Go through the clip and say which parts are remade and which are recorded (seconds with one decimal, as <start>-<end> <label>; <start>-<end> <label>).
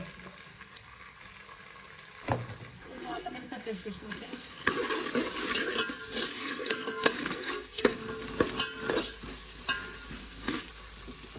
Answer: 0.0-0.5 recorded; 0.5-1.2 remade; 1.2-2.7 recorded; 2.7-4.7 remade; 4.7-6.3 recorded; 6.3-8.1 remade; 8.1-10.2 recorded; 10.2-10.7 remade; 10.7-11.4 recorded